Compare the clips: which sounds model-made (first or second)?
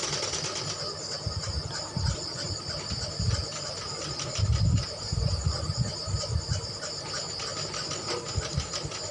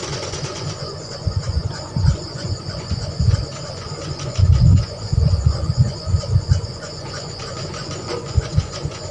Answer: second